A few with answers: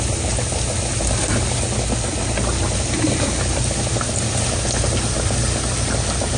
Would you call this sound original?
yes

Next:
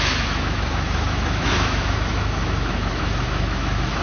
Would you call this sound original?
no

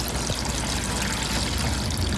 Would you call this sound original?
yes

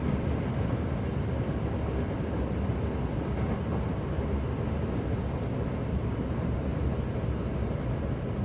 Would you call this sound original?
yes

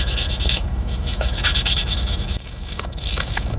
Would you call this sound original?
no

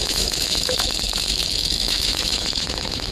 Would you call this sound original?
no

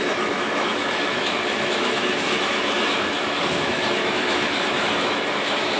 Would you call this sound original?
no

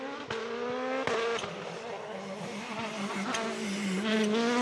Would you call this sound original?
yes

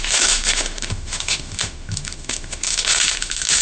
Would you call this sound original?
no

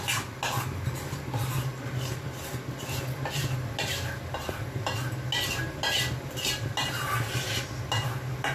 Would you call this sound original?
yes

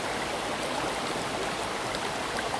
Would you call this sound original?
yes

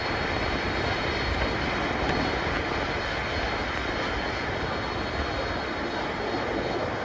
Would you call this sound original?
yes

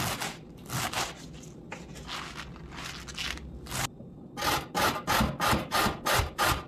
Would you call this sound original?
yes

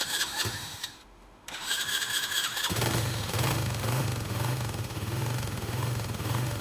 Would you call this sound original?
no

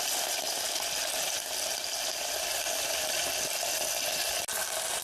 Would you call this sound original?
yes